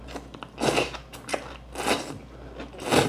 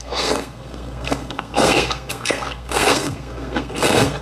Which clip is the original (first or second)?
first